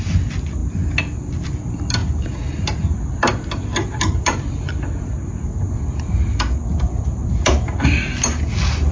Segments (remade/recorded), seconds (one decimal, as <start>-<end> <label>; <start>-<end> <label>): 0.0-8.9 recorded